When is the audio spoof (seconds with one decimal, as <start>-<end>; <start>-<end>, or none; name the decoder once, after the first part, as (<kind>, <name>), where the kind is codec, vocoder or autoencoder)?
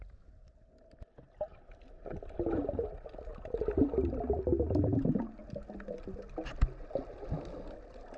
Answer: 1.5-2.9 (vocoder, BigVGAN v2); 3.3-4.2